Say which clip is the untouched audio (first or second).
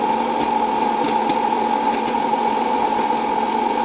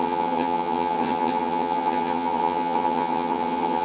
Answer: first